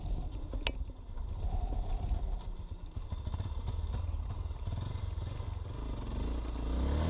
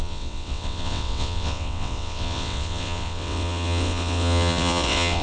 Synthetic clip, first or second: second